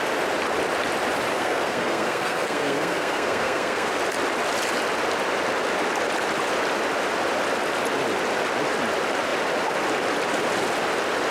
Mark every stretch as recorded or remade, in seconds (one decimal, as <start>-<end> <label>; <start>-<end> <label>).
0.0-1.3 recorded; 1.3-3.9 remade; 3.9-11.3 recorded

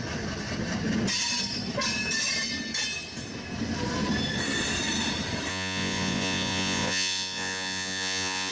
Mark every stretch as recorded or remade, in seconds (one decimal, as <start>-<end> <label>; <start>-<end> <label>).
0.0-5.5 recorded; 5.5-8.5 remade